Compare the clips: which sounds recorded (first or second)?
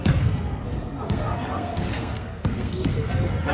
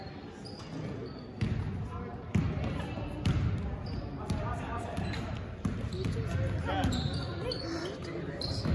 second